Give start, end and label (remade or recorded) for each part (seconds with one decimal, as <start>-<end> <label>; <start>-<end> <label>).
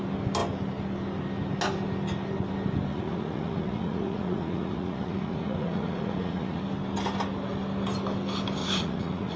0.0-2.9 recorded; 2.9-6.6 remade; 6.6-8.6 recorded; 8.6-9.4 remade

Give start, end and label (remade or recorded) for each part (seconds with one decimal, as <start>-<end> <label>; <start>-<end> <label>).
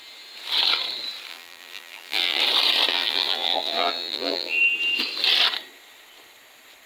0.0-1.3 recorded; 1.3-2.4 remade; 2.4-2.9 recorded; 2.9-4.6 remade; 4.6-6.9 recorded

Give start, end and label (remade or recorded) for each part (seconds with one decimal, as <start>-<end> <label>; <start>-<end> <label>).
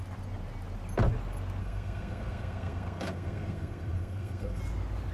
0.0-1.6 recorded; 1.6-4.6 remade; 4.6-5.1 recorded